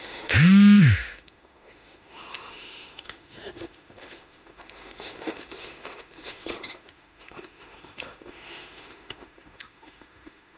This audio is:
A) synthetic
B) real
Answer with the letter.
A